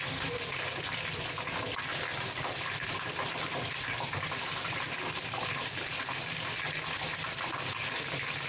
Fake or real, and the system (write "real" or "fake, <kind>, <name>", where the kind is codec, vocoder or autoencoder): real